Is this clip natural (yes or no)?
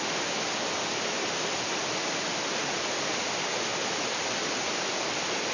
yes